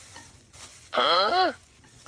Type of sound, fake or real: fake